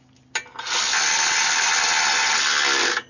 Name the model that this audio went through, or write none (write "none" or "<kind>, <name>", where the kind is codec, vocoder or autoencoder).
none